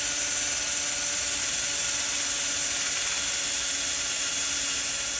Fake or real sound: real